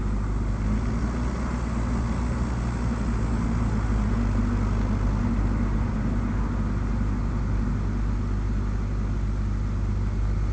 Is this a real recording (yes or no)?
yes